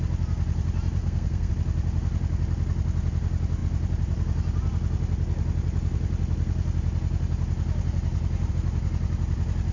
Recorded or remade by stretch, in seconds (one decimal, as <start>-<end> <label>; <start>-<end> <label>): 0.0-1.0 recorded; 1.0-1.5 remade; 1.5-9.7 recorded